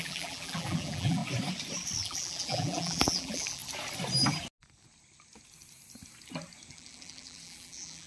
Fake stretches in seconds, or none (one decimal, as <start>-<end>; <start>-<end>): 0.0-1.2; 2.0-3.6; 6.7-8.1